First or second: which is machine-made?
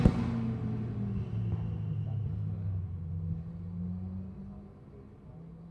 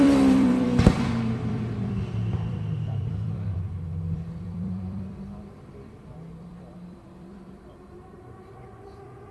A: second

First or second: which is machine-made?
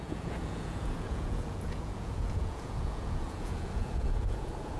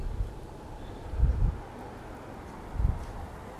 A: first